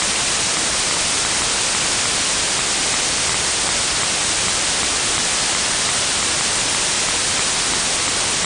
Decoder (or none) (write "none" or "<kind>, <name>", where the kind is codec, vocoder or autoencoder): none